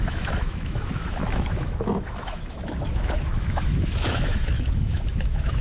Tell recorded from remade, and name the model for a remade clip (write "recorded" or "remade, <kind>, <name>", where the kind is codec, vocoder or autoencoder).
remade, autoencoder, DAC-VAE